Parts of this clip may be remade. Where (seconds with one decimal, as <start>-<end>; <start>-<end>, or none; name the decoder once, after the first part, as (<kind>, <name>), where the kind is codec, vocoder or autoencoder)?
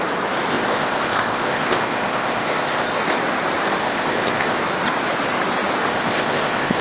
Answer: 0.5-3.0 (codec, ZipCodec); 3.8-4.6; 5.9-6.8